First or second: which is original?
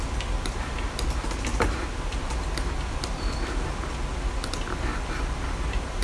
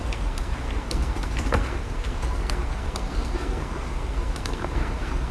first